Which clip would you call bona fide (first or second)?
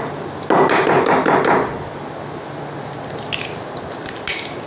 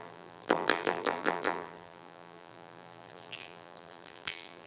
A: first